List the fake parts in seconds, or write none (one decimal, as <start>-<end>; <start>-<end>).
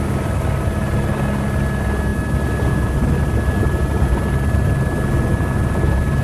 none